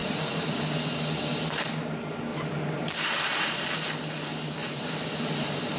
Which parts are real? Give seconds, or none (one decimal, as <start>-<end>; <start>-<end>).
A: 0.5-2.3; 3.5-4.6; 5.2-5.8